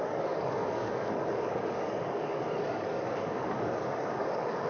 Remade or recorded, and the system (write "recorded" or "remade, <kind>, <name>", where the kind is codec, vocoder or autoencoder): remade, codec, DAC